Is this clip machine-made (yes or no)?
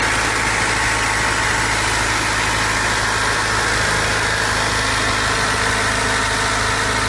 no